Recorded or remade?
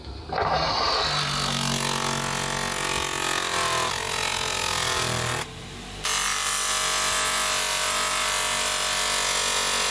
recorded